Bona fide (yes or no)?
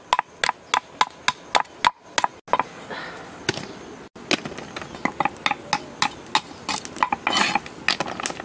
yes